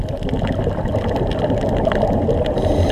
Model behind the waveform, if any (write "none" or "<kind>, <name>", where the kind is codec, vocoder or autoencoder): none